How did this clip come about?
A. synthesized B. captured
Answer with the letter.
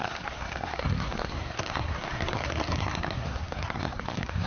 A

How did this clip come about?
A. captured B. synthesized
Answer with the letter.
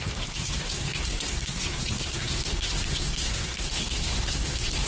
B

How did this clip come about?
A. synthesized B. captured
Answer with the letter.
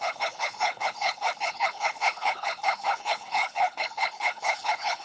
A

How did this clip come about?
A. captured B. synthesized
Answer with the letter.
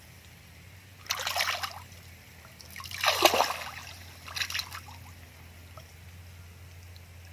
A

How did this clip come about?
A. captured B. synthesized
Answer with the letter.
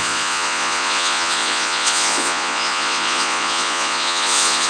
B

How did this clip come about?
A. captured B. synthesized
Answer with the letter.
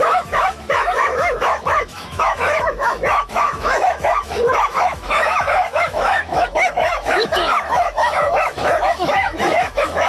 B